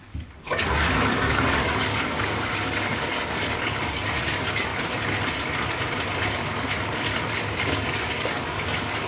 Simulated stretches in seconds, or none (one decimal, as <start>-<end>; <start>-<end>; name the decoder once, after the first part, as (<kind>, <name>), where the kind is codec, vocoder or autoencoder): 0.0-4.7 (codec, DAC); 7.3-9.1